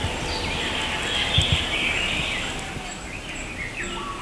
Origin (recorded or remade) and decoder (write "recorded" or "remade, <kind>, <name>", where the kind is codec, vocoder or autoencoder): recorded